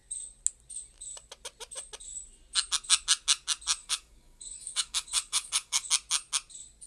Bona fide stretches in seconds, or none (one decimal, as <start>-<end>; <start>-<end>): 0.0-3.8; 5.9-6.9